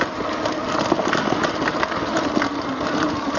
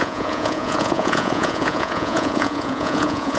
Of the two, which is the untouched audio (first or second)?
first